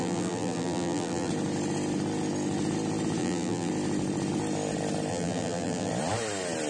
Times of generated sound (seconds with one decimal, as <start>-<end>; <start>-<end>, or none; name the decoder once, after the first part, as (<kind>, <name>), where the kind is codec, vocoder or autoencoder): 0.0-1.3 (vocoder, BigVGAN v2); 3.2-3.7; 5.1-5.9